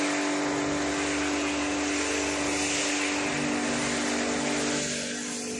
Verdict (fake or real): real